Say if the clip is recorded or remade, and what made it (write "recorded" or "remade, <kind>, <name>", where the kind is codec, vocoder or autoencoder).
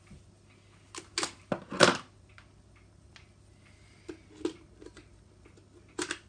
recorded